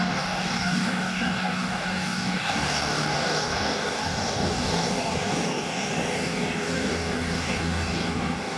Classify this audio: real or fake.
fake